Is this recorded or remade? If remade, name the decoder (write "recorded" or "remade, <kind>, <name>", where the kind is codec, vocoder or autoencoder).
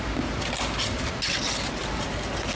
recorded